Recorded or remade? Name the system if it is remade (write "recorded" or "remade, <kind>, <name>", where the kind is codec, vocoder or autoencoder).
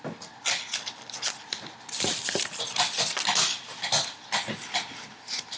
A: recorded